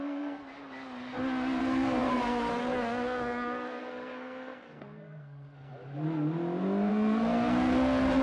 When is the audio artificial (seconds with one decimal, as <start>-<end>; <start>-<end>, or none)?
0.0-0.4; 1.6-5.7; 6.9-8.2